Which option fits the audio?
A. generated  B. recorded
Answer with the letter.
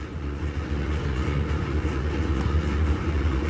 A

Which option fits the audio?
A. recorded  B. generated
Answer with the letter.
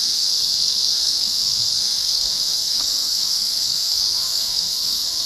B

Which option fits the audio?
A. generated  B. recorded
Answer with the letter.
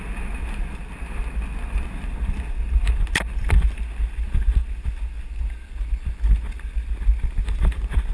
B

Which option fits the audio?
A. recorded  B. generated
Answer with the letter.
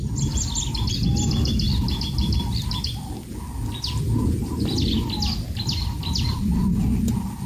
A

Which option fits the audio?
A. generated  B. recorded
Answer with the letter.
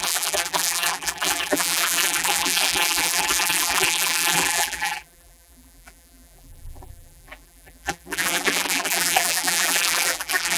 A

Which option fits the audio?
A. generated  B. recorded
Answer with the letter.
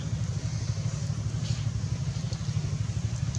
B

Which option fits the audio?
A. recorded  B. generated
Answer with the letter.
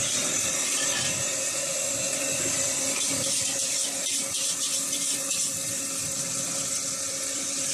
B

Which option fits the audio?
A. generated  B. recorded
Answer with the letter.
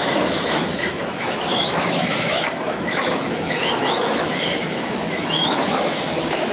A